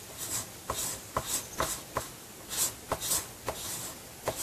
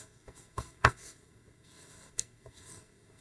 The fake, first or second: second